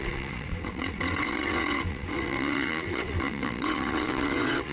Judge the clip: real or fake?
fake